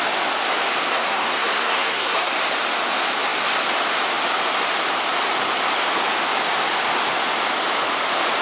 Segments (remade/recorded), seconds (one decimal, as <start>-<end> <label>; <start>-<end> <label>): 0.0-0.9 recorded; 0.9-2.3 remade; 2.3-8.4 recorded